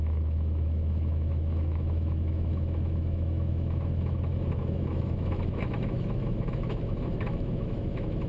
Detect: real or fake fake